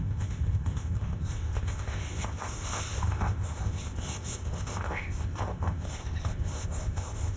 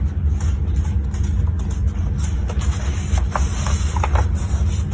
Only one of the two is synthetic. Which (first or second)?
first